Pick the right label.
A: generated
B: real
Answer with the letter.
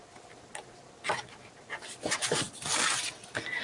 B